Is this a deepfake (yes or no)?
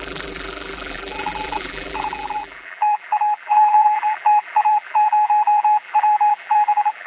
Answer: yes